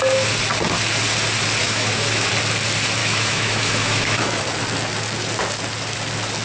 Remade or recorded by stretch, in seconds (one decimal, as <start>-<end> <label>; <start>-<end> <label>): 0.0-1.6 recorded; 1.6-2.3 remade; 2.3-3.0 recorded; 3.0-4.4 remade; 4.4-6.4 recorded